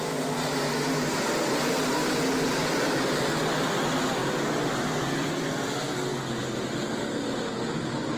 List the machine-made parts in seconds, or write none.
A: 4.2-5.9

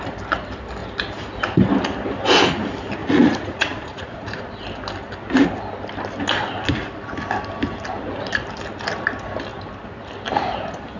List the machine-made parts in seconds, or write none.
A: 3.0-4.4

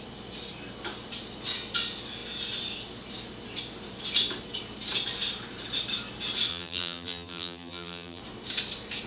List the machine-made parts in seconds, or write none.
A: 6.5-8.2

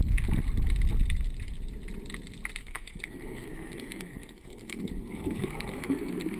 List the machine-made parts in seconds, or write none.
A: 2.6-6.4

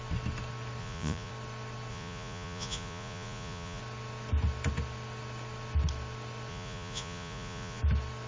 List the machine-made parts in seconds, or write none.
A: 0.8-1.3; 1.9-3.8; 6.5-7.8